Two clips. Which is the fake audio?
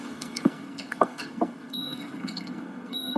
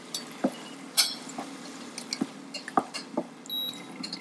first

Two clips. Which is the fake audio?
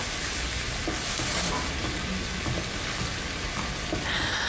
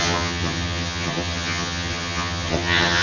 second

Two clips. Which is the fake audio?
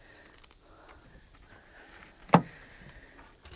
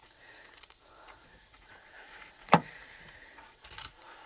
second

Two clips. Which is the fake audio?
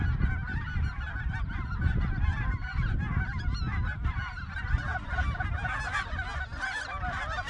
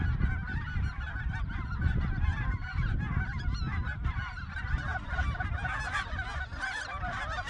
second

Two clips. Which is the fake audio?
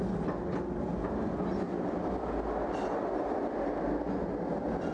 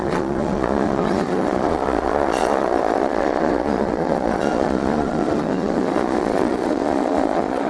second